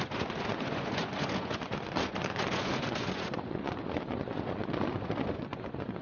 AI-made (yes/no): yes